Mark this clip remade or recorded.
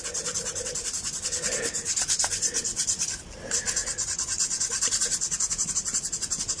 recorded